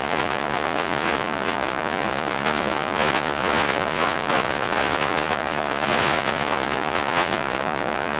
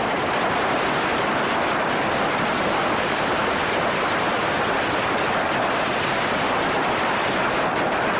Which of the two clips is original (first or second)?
second